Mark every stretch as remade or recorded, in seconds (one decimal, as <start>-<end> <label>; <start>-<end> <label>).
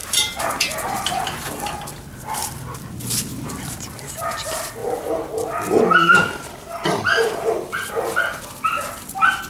0.0-4.8 recorded; 4.8-8.4 remade; 8.4-9.5 recorded